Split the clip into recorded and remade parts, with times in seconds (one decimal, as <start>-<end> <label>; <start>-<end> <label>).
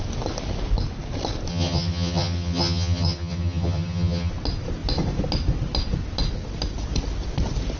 0.0-1.5 recorded; 1.5-4.3 remade; 4.3-7.8 recorded